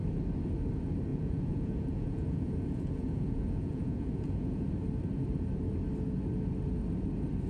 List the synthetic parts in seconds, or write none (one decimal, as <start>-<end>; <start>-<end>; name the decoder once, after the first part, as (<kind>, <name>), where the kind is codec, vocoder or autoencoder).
1.1-4.6 (vocoder, Vocos)